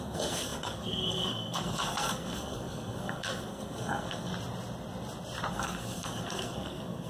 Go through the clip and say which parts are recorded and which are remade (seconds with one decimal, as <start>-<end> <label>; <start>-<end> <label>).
0.0-4.3 remade; 4.3-5.5 recorded; 5.5-7.1 remade